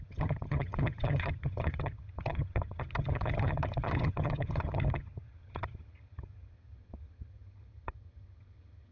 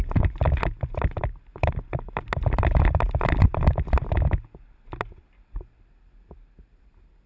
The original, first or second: second